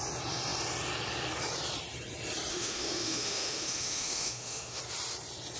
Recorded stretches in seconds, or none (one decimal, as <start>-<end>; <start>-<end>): 0.0-2.5; 4.8-5.6